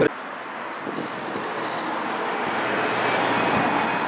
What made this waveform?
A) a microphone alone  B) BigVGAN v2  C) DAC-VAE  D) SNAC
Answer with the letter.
A